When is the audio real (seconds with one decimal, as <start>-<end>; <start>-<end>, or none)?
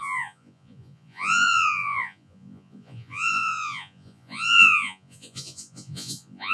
none